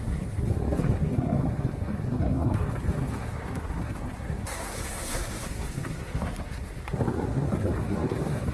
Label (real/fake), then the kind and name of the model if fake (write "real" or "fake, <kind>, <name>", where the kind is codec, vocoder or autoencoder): fake, codec, SNAC